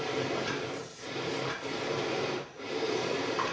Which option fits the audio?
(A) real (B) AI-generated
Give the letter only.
B